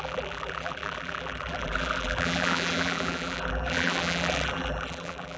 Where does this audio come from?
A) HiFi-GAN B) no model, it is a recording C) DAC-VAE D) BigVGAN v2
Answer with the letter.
D